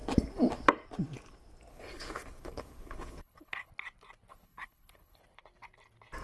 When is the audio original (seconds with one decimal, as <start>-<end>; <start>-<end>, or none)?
0.0-1.7; 3.7-4.3; 5.2-6.2